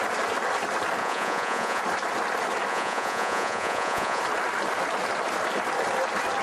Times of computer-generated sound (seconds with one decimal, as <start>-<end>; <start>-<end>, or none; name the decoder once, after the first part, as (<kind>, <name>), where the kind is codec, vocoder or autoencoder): 1.0-1.8 (vocoder, Vocos); 2.7-4.2